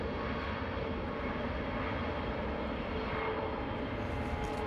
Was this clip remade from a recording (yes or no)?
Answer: no